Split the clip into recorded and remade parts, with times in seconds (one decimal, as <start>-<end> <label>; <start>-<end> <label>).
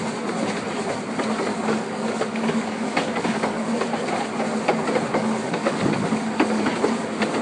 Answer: 0.0-1.5 recorded; 1.5-3.7 remade; 3.7-5.2 recorded; 5.2-6.7 remade; 6.7-7.4 recorded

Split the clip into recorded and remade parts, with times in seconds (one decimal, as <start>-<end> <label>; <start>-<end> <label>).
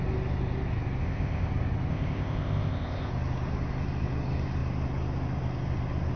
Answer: 0.0-1.0 recorded; 1.0-1.5 remade; 1.5-1.9 recorded; 1.9-3.1 remade; 3.1-6.2 recorded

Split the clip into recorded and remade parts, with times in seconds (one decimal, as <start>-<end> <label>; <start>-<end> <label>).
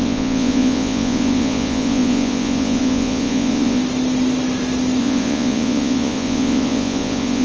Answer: 0.0-3.8 remade; 3.8-5.0 recorded; 5.0-7.4 remade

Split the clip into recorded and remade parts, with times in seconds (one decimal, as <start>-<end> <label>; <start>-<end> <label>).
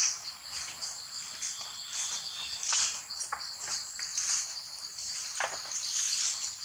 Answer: 0.0-4.1 recorded; 4.1-5.2 remade; 5.2-6.6 recorded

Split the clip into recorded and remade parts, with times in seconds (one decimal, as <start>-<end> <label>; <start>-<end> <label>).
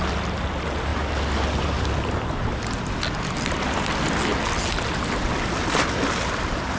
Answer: 0.0-6.8 recorded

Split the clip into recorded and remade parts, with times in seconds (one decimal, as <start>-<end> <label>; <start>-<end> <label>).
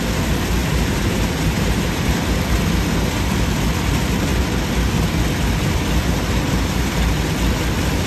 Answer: 0.0-0.6 recorded; 0.6-2.1 remade; 2.1-8.1 recorded